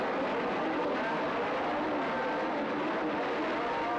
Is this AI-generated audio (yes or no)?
no